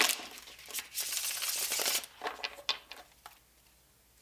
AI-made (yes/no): no